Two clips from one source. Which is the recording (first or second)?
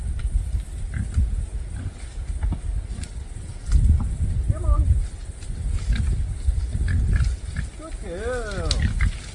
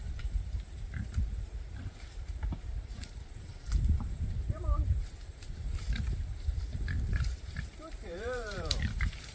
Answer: first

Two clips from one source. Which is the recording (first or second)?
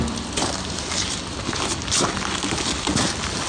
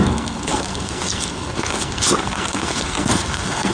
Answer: first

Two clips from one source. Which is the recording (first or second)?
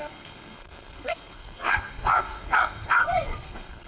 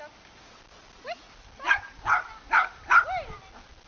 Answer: second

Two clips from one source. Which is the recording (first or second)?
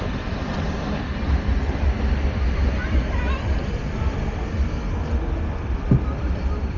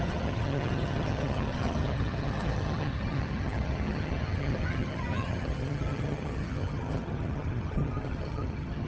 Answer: first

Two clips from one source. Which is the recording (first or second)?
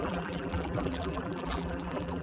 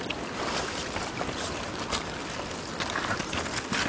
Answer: second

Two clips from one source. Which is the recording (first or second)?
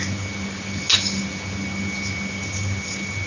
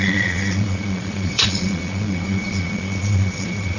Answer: first